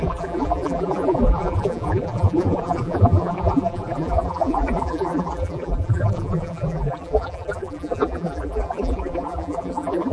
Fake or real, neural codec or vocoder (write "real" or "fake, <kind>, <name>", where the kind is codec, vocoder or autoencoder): fake, vocoder, BigVGAN v2